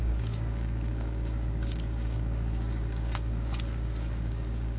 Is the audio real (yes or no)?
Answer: no